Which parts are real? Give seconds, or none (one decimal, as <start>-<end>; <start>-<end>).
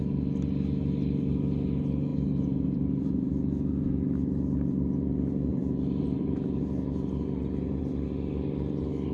0.0-2.1; 3.3-5.5; 7.8-9.1